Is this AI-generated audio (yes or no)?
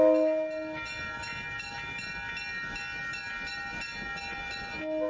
no